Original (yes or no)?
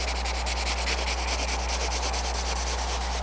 yes